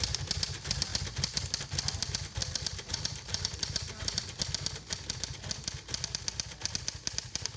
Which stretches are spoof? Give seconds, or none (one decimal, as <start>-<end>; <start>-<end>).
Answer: 2.4-4.4